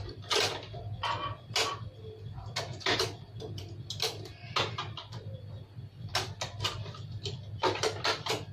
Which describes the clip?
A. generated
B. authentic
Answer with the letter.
B